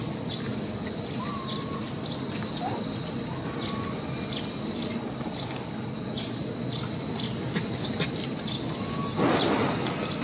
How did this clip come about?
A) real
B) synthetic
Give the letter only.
A